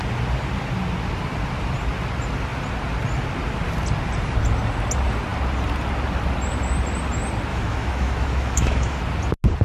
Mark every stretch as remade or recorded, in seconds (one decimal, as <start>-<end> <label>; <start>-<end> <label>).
0.0-7.5 recorded; 7.5-9.0 remade; 9.0-9.6 recorded